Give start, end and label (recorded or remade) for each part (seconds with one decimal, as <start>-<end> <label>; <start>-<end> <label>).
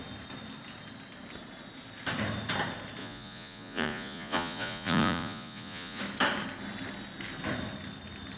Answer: 0.0-3.0 recorded; 3.0-6.0 remade; 6.0-8.4 recorded